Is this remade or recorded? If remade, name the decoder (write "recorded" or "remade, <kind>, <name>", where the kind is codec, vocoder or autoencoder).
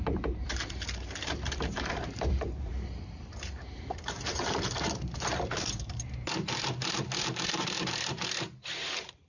remade, vocoder, BigVGAN v2